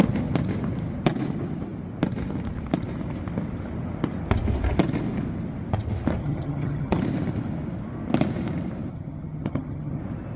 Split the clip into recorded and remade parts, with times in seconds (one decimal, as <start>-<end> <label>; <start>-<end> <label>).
0.0-6.2 recorded; 6.2-7.0 remade; 7.0-8.9 recorded; 8.9-10.0 remade; 10.0-10.4 recorded